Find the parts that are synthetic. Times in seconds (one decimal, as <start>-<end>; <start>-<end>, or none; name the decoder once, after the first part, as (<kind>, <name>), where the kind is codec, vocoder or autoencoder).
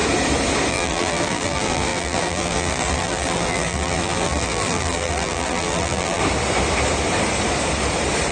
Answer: 0.7-6.2 (vocoder, BigVGAN v2)